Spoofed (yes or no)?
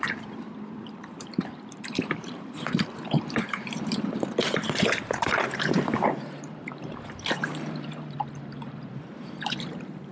yes